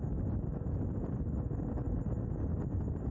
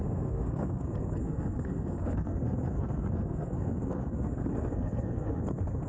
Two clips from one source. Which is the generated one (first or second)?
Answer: second